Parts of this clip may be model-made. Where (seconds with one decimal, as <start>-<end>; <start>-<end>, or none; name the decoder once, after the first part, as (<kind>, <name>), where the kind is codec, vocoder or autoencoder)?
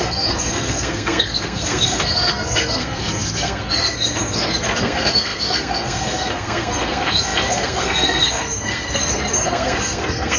0.0-10.4 (codec, SNAC)